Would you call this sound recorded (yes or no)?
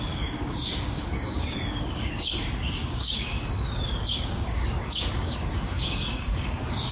no